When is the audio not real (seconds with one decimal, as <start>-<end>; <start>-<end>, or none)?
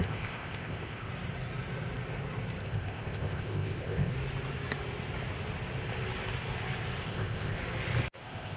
0.0-1.1; 2.6-4.1; 7.0-7.6; 8.1-8.6